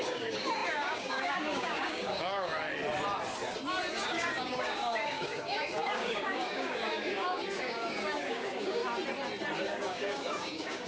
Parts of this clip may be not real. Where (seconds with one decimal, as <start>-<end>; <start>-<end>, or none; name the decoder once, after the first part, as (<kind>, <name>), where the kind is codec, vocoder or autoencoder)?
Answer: 0.0-2.5 (codec, DAC); 3.9-8.8; 9.6-10.9